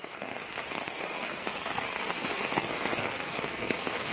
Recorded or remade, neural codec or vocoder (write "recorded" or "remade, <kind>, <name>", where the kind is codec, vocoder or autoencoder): remade, codec, SNAC